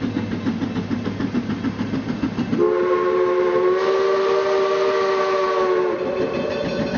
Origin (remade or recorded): recorded